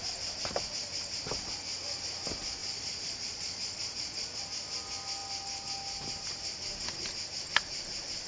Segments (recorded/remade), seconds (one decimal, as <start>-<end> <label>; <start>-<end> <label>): 0.0-2.6 recorded; 2.6-4.4 remade; 4.4-8.3 recorded